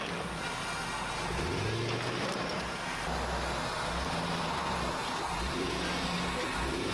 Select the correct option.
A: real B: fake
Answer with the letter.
A